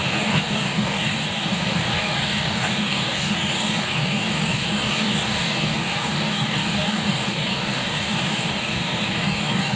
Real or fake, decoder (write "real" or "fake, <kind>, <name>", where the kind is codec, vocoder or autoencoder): fake, codec, DAC